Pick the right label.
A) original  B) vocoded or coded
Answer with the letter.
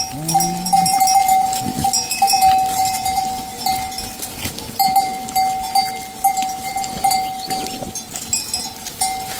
A